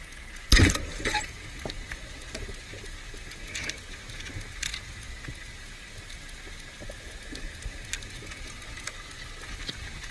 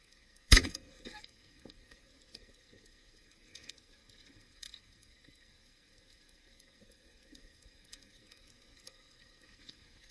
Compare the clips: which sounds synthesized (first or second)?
second